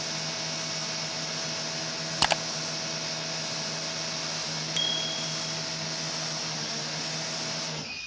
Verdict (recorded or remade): recorded